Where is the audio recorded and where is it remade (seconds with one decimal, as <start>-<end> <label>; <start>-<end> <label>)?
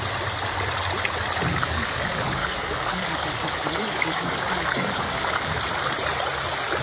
0.0-1.5 recorded; 1.5-5.6 remade; 5.6-6.8 recorded